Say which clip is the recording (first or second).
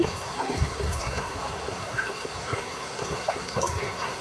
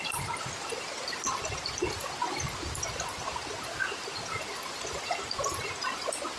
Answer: second